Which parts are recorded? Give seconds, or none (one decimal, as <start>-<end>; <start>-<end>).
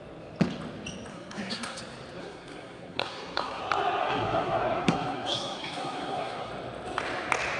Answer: 0.0-1.1; 1.8-2.2; 3.6-4.0; 6.5-7.6